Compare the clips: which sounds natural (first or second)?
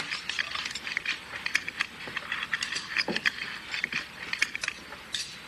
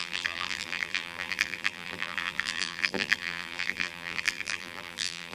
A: first